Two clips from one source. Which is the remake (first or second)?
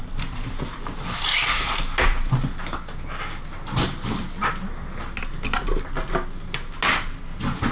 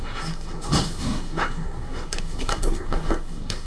second